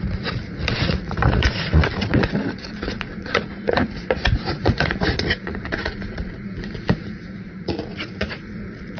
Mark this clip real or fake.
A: fake